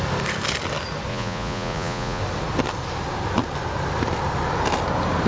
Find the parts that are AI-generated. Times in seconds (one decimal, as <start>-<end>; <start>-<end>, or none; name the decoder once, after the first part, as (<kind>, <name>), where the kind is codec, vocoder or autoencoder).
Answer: 1.1-2.2 (vocoder, Vocos)